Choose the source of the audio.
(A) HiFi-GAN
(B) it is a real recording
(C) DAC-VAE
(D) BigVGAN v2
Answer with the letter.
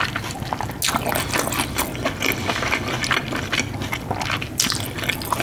B